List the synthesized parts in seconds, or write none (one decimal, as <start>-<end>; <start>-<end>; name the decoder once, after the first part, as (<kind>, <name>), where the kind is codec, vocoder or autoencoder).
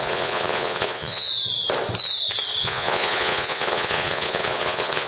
0.0-1.3 (vocoder, Vocos); 2.6-5.1